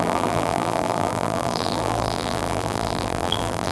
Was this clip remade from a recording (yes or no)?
yes